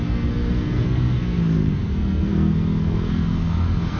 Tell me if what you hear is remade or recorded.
remade